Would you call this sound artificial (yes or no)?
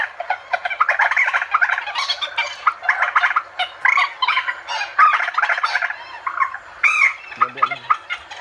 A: no